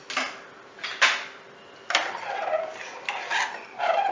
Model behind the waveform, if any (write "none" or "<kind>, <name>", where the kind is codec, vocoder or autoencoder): none